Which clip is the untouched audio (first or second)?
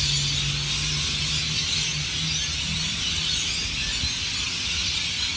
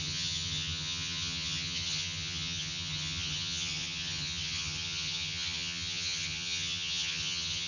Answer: first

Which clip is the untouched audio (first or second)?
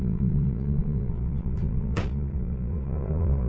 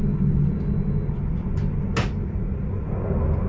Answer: second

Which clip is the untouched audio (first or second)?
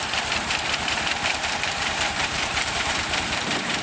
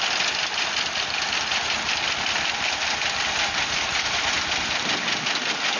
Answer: second